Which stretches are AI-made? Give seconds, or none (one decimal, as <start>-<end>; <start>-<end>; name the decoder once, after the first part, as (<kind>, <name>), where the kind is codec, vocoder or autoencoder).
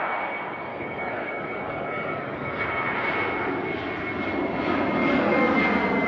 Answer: 0.7-2.6 (codec, DAC); 5.0-5.6